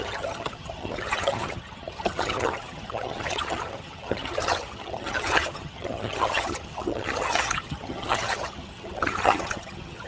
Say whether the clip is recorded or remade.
remade